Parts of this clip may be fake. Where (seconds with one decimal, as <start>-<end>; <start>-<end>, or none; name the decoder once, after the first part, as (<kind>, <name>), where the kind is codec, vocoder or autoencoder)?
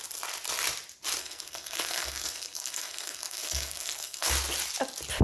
1.2-4.3 (codec, SNAC)